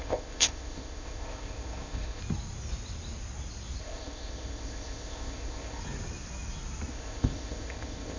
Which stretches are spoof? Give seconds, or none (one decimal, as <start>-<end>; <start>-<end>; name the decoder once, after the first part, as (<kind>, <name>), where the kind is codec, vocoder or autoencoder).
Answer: 0.0-2.2 (codec, ZipCodec); 3.8-5.8; 6.9-8.2